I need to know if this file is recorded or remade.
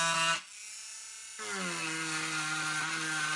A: recorded